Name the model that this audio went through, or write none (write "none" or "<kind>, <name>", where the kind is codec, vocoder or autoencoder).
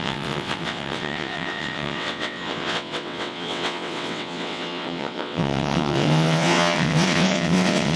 vocoder, WaveNeXt